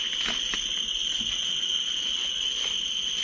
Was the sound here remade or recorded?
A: recorded